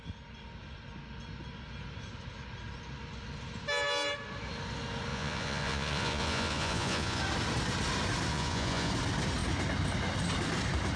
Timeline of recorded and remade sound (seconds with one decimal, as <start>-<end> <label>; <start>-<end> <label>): 0.0-5.1 recorded; 5.1-7.2 remade; 7.2-8.3 recorded; 8.3-8.9 remade; 8.9-11.0 recorded